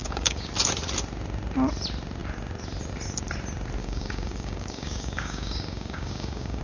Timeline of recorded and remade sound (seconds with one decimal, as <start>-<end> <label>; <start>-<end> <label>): 0.0-0.5 remade; 0.5-3.8 recorded; 3.8-6.6 remade